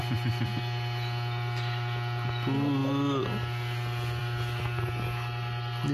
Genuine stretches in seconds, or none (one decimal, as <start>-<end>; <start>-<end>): 0.0-5.9